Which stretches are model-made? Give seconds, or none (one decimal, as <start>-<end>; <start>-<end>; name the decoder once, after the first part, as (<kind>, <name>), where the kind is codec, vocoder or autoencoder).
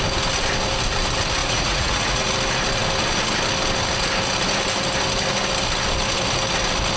1.4-2.3 (vocoder, Vocos)